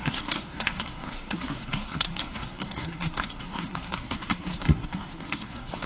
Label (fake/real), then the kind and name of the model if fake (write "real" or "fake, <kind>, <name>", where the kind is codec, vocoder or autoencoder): fake, codec, SNAC